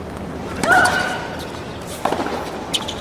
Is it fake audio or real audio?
fake